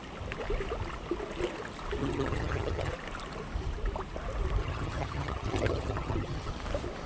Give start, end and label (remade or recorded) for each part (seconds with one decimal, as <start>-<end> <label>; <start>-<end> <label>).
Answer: 0.0-2.0 recorded; 2.0-2.9 remade; 2.9-4.6 recorded; 4.6-6.5 remade; 6.5-7.1 recorded